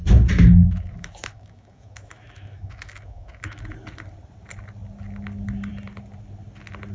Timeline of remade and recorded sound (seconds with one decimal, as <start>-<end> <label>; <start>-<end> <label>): 0.0-0.6 recorded; 0.6-3.6 remade; 3.6-6.9 recorded